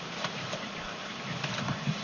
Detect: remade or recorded remade